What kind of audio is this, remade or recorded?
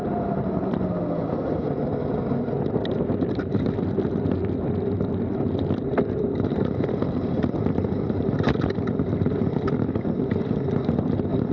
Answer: recorded